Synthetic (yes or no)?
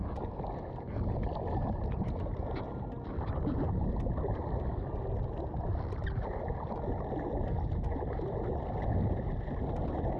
no